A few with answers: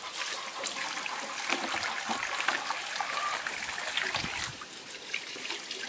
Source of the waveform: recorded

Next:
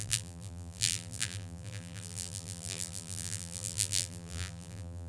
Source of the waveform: remade